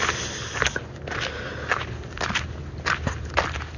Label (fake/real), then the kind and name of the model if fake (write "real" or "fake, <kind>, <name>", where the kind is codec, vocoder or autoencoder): real